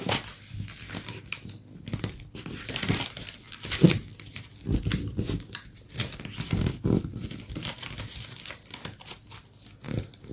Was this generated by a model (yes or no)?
no